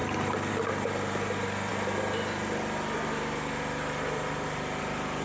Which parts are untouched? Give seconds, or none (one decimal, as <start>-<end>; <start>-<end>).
0.0-5.2